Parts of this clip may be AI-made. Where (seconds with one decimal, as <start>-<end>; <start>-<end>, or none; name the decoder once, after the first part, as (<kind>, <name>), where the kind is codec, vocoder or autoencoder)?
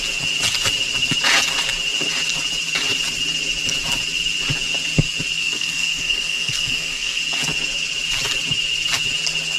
5.4-7.2 (codec, SNAC)